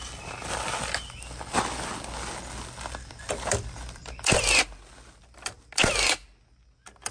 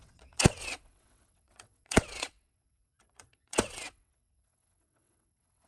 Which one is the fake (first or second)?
second